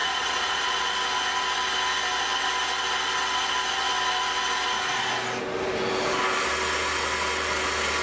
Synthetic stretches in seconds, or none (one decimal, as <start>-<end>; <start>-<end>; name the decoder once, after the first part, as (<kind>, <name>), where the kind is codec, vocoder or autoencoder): 0.0-0.8 (vocoder, Vocos)